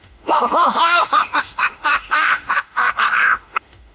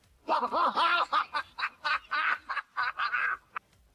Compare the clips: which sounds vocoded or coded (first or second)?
first